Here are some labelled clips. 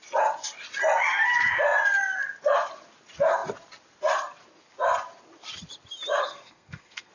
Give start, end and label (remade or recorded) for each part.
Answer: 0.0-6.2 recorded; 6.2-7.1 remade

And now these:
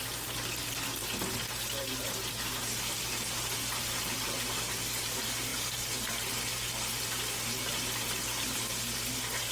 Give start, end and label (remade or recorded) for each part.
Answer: 0.0-9.5 recorded

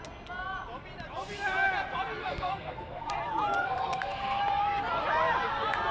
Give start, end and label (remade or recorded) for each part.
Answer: 0.0-2.2 recorded; 2.2-3.1 remade; 3.1-3.6 recorded; 3.6-4.4 remade; 4.4-5.9 recorded

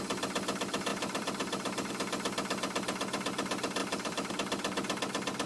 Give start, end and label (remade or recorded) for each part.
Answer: 0.0-0.9 recorded; 0.9-1.9 remade; 1.9-3.8 recorded; 3.8-4.3 remade; 4.3-5.5 recorded

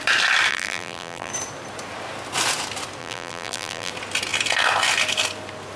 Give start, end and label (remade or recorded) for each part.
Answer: 0.0-0.5 recorded; 0.5-1.3 remade; 1.3-3.0 recorded; 3.0-3.9 remade; 3.9-5.8 recorded

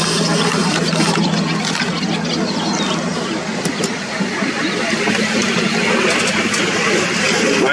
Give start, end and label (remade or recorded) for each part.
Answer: 0.0-0.6 recorded; 0.6-1.9 remade; 1.9-5.4 recorded; 5.4-6.2 remade; 6.2-7.7 recorded